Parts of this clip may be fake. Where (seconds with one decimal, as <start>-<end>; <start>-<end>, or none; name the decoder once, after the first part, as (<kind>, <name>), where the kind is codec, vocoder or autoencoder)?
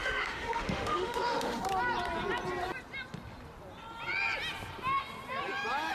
0.0-1.6 (autoencoder, DAC-VAE)